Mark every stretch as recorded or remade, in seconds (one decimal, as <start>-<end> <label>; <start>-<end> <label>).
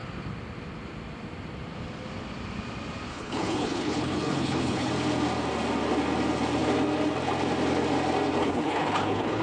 0.0-3.1 recorded; 3.1-4.9 remade; 4.9-8.4 recorded; 8.4-9.4 remade